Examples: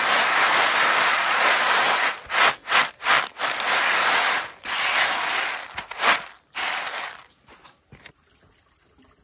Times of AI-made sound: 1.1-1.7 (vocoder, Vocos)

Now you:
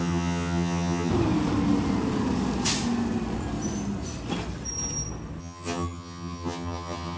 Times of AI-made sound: 0.0-1.1 (vocoder, HiFi-GAN); 5.4-7.2